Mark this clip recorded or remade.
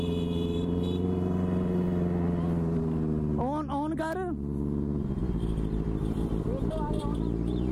recorded